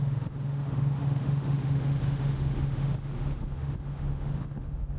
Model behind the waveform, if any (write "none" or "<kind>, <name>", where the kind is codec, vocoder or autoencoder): autoencoder, DAC-VAE